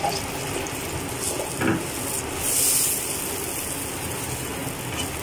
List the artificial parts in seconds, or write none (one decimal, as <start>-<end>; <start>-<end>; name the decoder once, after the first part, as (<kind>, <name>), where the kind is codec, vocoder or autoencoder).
none